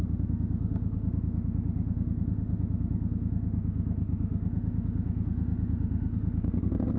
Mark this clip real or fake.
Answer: fake